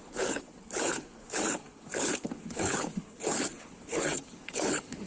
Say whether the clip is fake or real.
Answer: fake